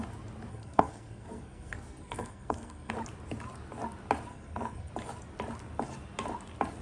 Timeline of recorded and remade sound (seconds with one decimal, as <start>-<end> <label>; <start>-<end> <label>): 0.0-0.5 recorded; 0.5-2.9 remade; 2.9-4.3 recorded; 4.3-4.9 remade; 4.9-6.8 recorded

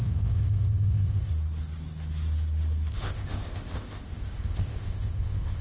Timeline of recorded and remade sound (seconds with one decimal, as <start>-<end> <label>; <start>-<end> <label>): 0.0-1.3 remade; 1.3-2.9 recorded; 2.9-5.6 remade

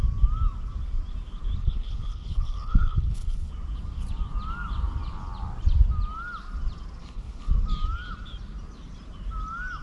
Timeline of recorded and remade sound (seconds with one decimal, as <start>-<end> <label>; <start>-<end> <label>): 0.0-1.6 recorded; 1.6-3.5 remade; 3.5-7.0 recorded; 7.0-7.5 remade; 7.5-9.8 recorded

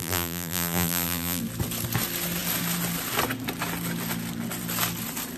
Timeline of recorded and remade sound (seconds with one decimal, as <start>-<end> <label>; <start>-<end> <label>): 0.0-1.4 remade; 1.4-5.4 recorded

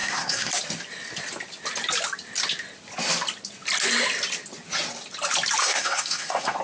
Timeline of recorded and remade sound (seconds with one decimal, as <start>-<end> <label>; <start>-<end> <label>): 0.0-0.5 remade; 0.5-5.6 recorded; 5.6-6.6 remade

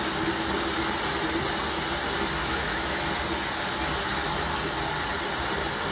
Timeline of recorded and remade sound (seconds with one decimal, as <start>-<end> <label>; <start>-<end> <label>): 0.0-2.4 recorded; 2.4-3.0 remade; 3.0-5.9 recorded

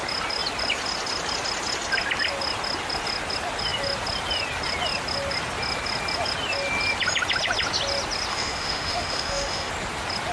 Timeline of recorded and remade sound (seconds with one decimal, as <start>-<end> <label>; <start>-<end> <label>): 0.0-8.3 recorded; 8.3-9.7 remade; 9.7-10.3 recorded